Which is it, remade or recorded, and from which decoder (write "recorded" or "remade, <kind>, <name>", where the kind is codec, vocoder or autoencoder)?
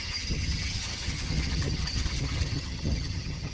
remade, vocoder, HiFi-GAN